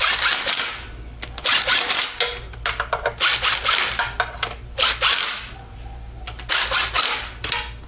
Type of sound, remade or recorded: recorded